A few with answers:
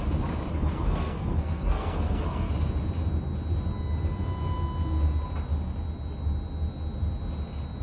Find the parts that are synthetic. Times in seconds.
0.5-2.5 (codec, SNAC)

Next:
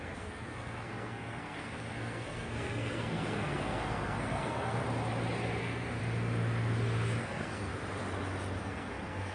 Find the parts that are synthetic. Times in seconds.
0.0-4.8 (codec, SNAC); 5.6-6.0; 7.2-7.7; 8.6-9.3

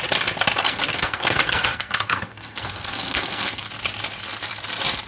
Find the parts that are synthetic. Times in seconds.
0.6-3.7 (codec, SNAC)

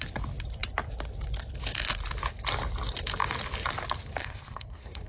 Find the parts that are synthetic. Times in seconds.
4.2-5.1 (codec, SNAC)

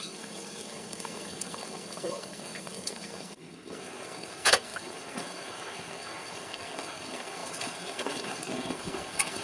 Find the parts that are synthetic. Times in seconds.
0.0-9.4 (codec, SNAC)